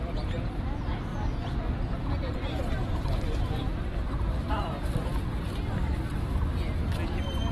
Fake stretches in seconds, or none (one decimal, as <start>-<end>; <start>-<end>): 0.0-1.1; 1.7-2.9